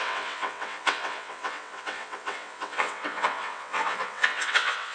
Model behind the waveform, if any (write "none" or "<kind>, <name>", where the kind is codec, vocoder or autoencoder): vocoder, WaveNeXt